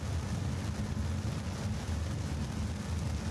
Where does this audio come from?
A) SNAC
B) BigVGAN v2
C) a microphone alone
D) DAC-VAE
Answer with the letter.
C